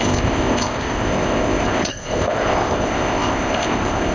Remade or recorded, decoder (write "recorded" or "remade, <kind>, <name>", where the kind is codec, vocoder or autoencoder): remade, codec, ZipCodec